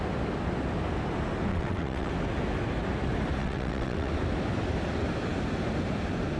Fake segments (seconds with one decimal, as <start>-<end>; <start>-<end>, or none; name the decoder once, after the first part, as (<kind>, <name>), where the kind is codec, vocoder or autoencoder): 1.5-2.1 (vocoder, WaveNeXt); 3.4-4.1